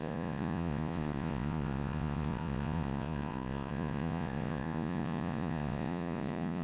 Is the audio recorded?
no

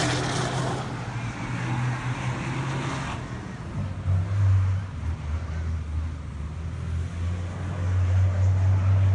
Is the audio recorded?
yes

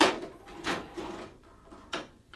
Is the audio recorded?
no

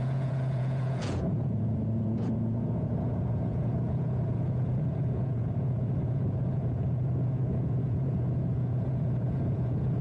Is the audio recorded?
no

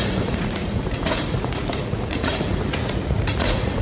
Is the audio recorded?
no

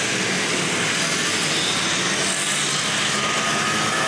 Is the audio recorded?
yes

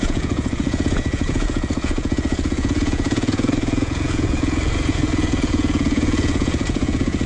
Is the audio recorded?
no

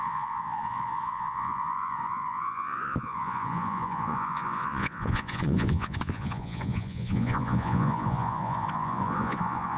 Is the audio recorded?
no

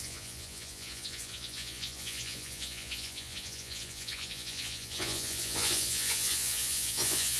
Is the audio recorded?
no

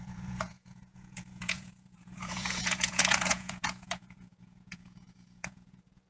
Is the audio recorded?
no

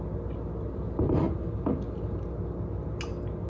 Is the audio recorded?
yes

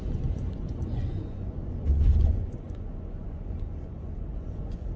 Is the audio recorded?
no